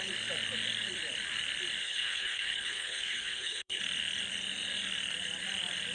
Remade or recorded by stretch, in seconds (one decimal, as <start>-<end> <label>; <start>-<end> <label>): 0.0-1.8 recorded; 1.8-3.8 remade; 3.8-5.9 recorded